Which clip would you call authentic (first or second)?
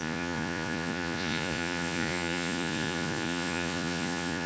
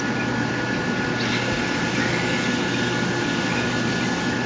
second